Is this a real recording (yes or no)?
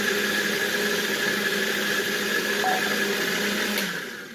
yes